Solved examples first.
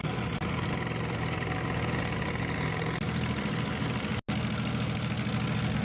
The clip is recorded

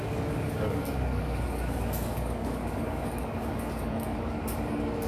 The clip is remade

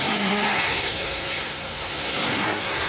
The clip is remade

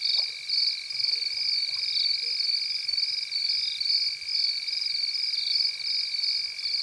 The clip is recorded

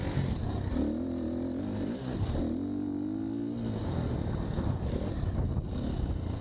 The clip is recorded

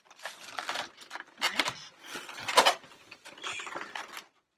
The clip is recorded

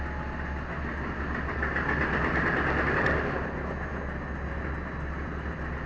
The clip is recorded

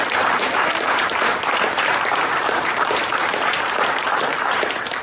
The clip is remade